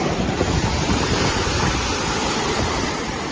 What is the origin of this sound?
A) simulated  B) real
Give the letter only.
B